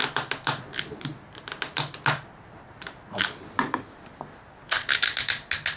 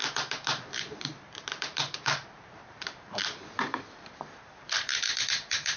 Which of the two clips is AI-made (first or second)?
second